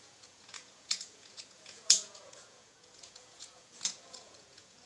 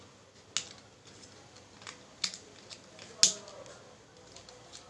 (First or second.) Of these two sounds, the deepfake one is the first